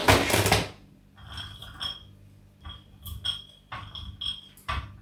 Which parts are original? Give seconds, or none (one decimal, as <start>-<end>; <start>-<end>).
0.0-5.0